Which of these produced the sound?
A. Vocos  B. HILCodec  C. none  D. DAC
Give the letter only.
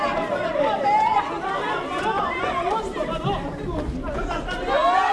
C